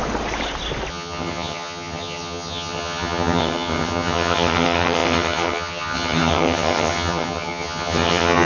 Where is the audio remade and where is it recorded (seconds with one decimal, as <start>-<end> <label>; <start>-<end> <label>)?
0.0-0.9 recorded; 0.9-8.4 remade